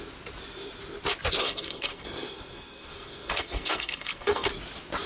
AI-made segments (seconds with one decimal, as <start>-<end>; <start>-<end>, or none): 1.4-4.5